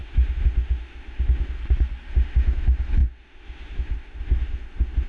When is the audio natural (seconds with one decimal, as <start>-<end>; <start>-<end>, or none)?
1.6-2.1